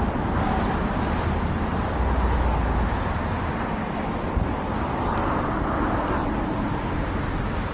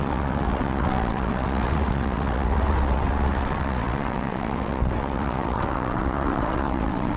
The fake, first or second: second